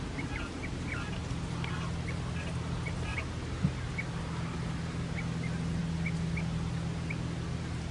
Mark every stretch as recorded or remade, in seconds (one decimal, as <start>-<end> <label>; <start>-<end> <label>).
0.0-7.9 recorded